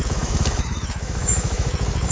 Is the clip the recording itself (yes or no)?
no